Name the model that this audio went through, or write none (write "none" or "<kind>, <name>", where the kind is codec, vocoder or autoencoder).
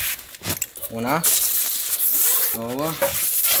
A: none